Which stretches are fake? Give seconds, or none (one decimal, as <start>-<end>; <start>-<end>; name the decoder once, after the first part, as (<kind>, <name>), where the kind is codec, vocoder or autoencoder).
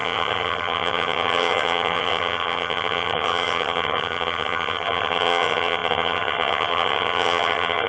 0.0-7.9 (vocoder, HiFi-GAN)